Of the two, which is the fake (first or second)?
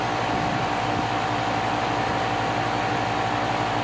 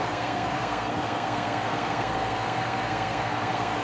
second